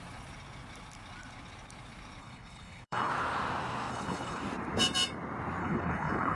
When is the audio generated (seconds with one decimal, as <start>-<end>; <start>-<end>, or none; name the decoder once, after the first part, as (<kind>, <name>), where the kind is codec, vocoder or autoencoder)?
2.2-3.1 (codec, HILCodec); 3.9-4.4; 5.6-6.4